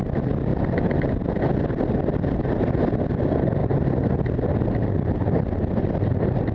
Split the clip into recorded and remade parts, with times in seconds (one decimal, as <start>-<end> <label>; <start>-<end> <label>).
0.0-3.6 remade; 3.6-5.8 recorded; 5.8-6.5 remade

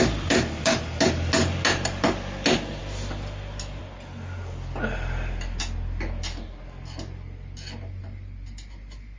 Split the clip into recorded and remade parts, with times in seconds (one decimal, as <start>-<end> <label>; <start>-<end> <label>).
0.0-9.2 recorded

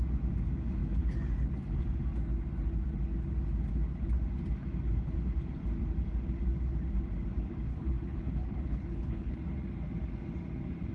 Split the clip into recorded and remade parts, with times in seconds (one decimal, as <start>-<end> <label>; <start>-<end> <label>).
0.0-7.7 recorded; 7.7-9.4 remade; 9.4-10.9 recorded

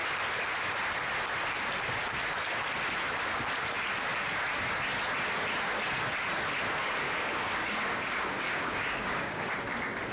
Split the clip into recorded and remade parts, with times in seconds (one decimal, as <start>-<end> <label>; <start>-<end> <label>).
0.0-6.8 recorded; 6.8-9.5 remade; 9.5-10.1 recorded

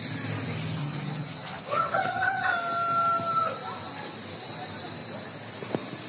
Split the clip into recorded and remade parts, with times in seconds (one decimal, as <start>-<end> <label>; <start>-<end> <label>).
0.0-0.8 recorded; 0.8-2.5 remade; 2.5-6.1 recorded

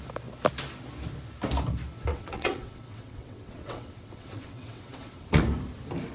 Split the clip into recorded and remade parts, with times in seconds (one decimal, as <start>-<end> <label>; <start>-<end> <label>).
0.0-2.1 recorded; 2.1-5.4 remade; 5.4-6.1 recorded